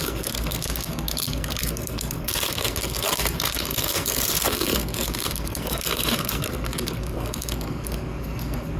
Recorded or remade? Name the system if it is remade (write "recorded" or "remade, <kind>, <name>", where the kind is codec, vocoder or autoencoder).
remade, codec, SNAC